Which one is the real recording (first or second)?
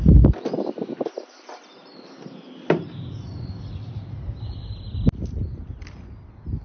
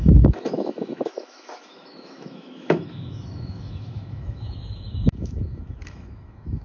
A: first